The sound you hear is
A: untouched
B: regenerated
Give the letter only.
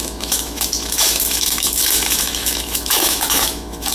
B